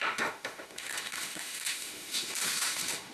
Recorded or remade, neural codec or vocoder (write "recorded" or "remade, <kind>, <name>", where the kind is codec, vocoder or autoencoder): remade, autoencoder, DAC-VAE